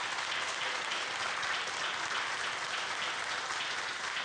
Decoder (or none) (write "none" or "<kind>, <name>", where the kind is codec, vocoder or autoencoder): none